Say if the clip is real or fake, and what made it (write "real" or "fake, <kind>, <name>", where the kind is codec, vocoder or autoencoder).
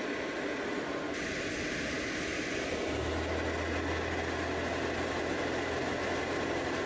real